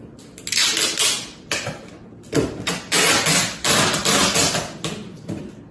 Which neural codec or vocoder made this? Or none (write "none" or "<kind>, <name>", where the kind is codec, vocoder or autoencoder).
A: none